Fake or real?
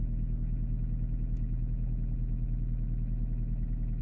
real